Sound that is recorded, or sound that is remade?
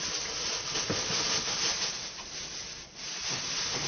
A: recorded